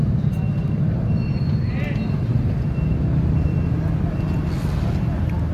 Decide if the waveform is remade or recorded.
recorded